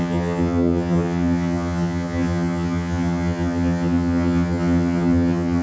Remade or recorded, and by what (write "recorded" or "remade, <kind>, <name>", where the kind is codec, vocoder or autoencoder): remade, vocoder, HiFi-GAN